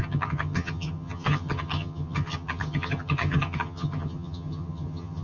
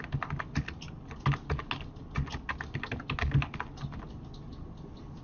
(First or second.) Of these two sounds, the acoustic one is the second